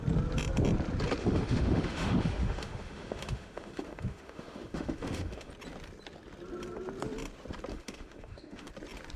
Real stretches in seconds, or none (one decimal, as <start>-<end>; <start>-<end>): 0.0-1.2; 5.5-7.7; 8.7-9.2